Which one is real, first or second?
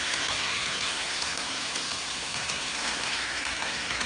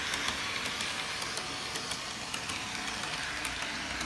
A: second